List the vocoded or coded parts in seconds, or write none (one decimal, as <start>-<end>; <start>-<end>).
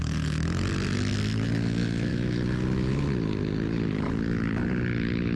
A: none